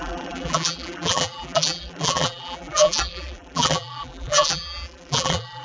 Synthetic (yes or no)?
yes